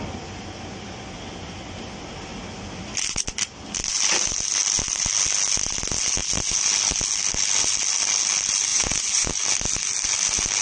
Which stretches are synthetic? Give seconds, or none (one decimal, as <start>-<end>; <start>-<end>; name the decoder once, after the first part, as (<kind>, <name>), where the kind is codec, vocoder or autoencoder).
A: 8.7-9.3 (vocoder, Vocos)